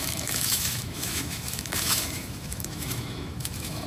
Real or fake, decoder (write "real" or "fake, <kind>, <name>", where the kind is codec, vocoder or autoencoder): fake, autoencoder, DAC-VAE